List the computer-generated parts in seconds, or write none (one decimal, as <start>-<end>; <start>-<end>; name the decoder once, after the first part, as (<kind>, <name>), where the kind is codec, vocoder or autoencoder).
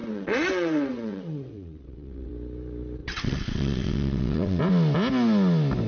0.0-2.3 (vocoder, WaveNeXt); 3.0-4.6